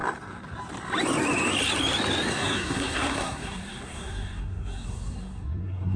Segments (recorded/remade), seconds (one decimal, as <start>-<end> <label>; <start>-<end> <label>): 0.0-2.3 recorded; 2.3-6.0 remade